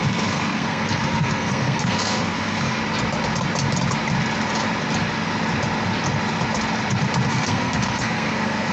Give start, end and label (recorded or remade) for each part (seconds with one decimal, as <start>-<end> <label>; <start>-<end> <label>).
0.0-2.8 remade; 2.8-7.3 recorded; 7.3-8.7 remade

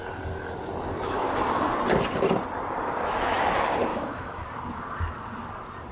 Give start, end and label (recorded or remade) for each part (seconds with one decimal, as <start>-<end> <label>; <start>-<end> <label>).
0.0-3.9 recorded; 3.9-4.4 remade; 4.4-5.9 recorded